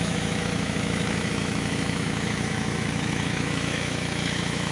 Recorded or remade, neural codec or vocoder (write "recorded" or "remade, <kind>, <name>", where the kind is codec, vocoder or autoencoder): remade, autoencoder, DAC-VAE